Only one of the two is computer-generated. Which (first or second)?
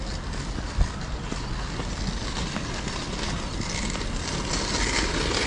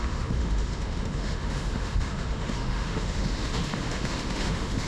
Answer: second